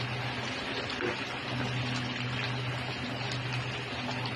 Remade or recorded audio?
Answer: recorded